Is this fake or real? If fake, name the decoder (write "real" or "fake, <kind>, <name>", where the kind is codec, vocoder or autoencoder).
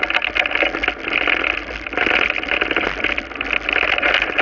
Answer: real